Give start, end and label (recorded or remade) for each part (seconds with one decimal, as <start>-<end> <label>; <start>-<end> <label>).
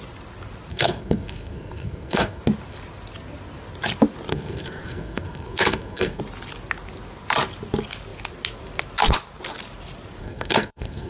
0.0-0.7 recorded; 0.7-2.4 remade; 2.4-4.3 recorded; 4.3-6.2 remade; 6.2-10.2 recorded; 10.2-11.1 remade